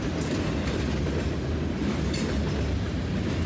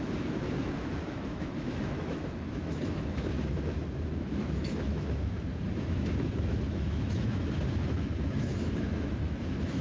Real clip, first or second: first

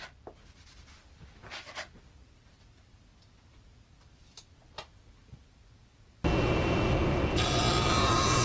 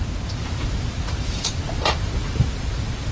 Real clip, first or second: first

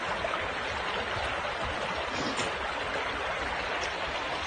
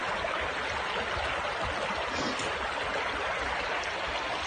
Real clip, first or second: second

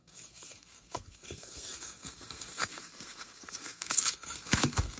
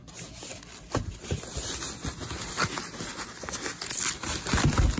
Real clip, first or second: second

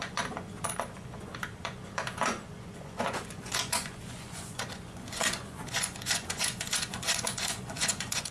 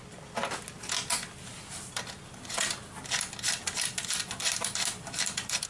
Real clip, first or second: second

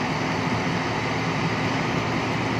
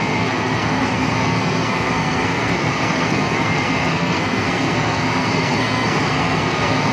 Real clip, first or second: first